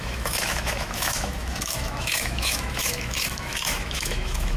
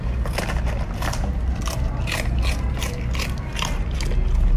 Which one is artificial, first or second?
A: first